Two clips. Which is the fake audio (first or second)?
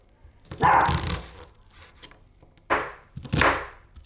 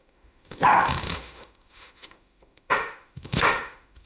second